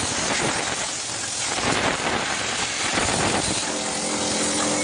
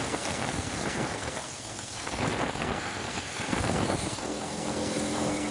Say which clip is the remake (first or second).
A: second